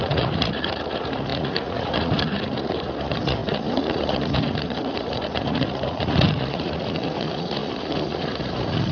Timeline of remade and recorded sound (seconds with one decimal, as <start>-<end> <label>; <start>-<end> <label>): 0.0-8.9 remade